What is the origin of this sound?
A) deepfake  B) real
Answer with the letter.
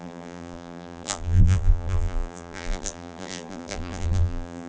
A